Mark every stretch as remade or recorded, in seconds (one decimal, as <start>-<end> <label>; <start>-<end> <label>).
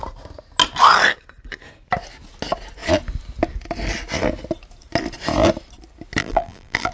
0.0-6.2 recorded; 6.2-6.9 remade